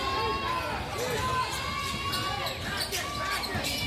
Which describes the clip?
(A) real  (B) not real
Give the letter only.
A